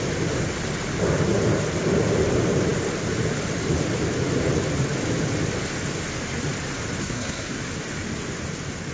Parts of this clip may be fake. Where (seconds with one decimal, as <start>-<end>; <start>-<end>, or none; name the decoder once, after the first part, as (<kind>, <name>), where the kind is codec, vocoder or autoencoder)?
7.0-7.6 (codec, SNAC)